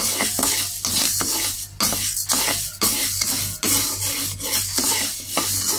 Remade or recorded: recorded